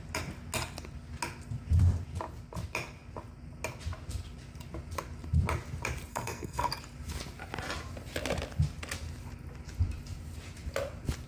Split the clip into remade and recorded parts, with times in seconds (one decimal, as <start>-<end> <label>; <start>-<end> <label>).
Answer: 0.0-6.1 recorded; 6.1-6.7 remade; 6.7-11.3 recorded